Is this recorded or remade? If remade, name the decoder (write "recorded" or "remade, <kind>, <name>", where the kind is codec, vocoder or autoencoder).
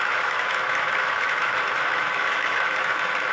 remade, autoencoder, DAC-VAE